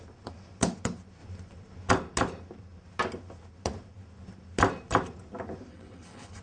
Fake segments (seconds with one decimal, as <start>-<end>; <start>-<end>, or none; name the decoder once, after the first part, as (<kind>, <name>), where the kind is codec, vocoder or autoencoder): 5.7-6.4 (codec, HILCodec)